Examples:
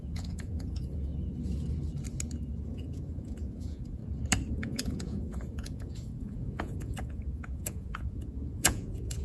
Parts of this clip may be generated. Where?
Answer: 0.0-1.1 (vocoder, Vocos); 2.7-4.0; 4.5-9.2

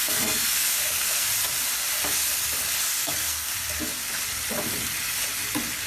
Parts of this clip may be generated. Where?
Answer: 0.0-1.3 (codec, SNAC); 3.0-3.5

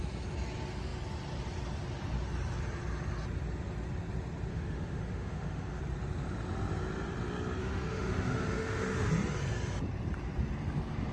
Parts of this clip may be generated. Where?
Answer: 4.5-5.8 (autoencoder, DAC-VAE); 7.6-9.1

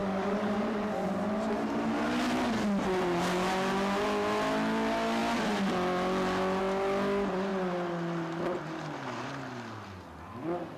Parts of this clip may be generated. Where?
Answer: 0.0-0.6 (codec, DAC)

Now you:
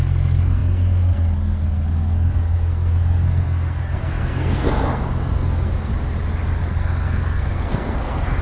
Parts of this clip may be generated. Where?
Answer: 0.0-5.9 (codec, SNAC); 6.6-8.4

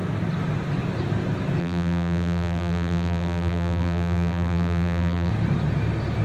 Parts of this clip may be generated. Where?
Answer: 1.6-5.3 (vocoder, BigVGAN v2)

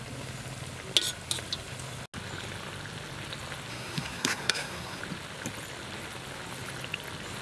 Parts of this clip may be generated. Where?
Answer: 3.7-5.0 (codec, SNAC)

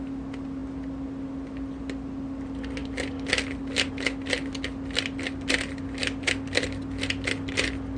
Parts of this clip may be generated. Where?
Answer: none